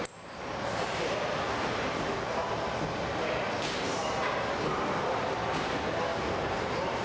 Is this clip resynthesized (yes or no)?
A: no